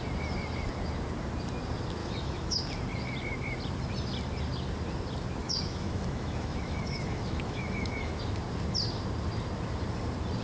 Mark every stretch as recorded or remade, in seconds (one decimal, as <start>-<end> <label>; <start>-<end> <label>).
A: 0.0-2.0 recorded; 2.0-2.6 remade; 2.6-5.4 recorded; 5.4-8.2 remade; 8.2-10.4 recorded